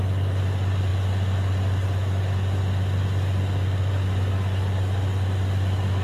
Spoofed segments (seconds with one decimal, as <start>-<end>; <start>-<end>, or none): none